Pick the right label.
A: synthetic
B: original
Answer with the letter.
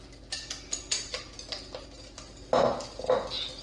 B